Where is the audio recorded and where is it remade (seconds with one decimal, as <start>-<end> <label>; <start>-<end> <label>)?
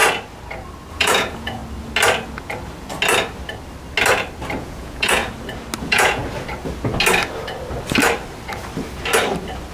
0.0-0.9 recorded; 0.9-1.6 remade; 1.6-4.6 recorded; 4.6-5.2 remade; 5.2-5.8 recorded; 5.8-6.2 remade; 6.2-9.7 recorded